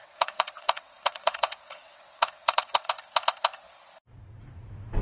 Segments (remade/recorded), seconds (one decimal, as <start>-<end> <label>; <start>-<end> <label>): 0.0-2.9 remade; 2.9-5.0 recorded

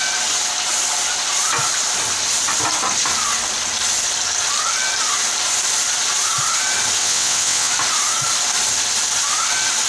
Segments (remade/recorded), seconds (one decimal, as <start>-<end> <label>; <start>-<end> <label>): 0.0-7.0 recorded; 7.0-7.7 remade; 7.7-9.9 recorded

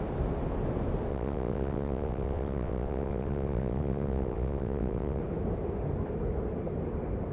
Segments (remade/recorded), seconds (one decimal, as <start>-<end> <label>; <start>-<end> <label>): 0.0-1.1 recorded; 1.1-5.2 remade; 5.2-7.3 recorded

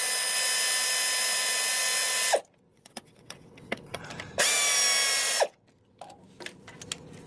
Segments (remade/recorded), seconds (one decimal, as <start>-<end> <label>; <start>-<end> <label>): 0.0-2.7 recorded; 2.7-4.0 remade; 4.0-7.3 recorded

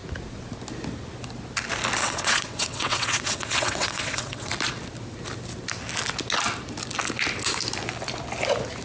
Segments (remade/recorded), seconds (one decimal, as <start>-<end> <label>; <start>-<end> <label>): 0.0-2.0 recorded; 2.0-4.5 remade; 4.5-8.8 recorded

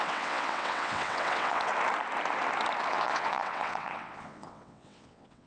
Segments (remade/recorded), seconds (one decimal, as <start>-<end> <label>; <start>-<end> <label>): 0.0-1.7 remade; 1.7-2.9 recorded; 2.9-5.5 remade

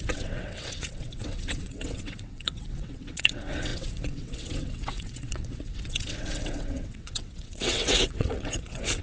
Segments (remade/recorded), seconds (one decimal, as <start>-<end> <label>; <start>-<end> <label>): 0.0-9.0 remade

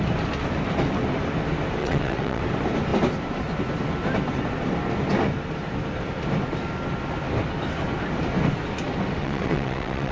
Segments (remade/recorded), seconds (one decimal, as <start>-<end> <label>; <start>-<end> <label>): 0.0-1.8 recorded; 1.8-2.4 remade; 2.4-9.2 recorded; 9.2-10.1 remade